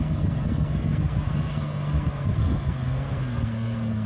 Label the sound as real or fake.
fake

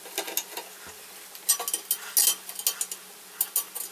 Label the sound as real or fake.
real